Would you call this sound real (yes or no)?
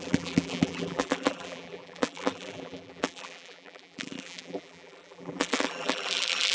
no